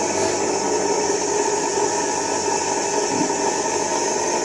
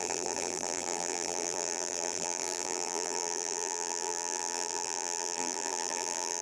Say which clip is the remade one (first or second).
second